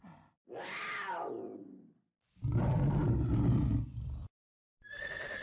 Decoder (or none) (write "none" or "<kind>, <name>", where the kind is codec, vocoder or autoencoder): none